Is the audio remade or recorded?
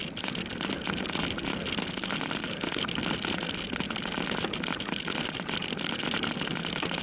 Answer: recorded